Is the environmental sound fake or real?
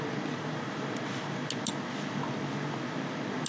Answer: real